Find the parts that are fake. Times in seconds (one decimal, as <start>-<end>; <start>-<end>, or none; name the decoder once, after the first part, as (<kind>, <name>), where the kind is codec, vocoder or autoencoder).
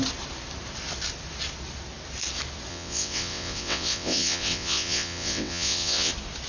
2.7-6.1 (vocoder, WaveNeXt)